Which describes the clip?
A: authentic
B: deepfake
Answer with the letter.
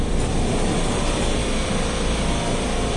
A